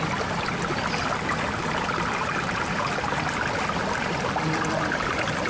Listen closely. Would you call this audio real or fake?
real